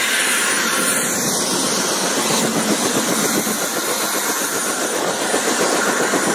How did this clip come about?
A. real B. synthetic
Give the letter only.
A